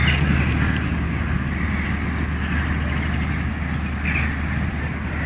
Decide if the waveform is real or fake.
real